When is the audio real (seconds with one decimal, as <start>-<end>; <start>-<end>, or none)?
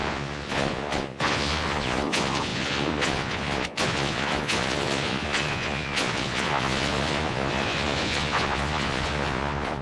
none